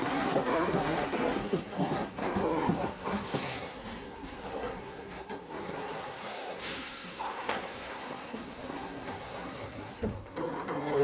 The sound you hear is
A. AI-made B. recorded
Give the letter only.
A